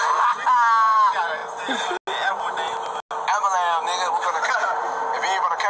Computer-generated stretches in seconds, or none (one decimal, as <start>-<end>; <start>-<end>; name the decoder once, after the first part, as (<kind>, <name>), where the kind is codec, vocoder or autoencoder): none